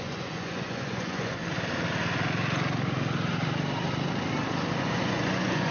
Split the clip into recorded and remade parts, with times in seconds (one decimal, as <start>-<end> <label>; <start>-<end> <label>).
0.0-1.4 remade; 1.4-4.8 recorded; 4.8-5.7 remade